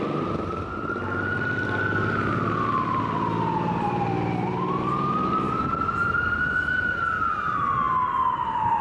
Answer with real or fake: real